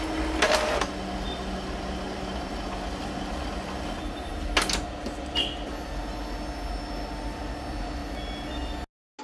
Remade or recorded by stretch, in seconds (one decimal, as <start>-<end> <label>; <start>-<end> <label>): 0.0-9.2 recorded